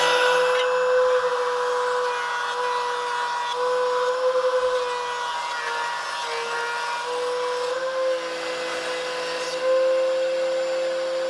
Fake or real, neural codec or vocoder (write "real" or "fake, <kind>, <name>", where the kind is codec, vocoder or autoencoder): real